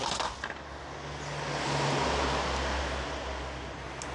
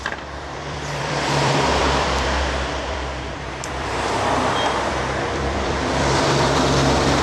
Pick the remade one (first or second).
second